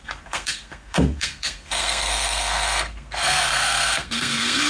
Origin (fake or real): fake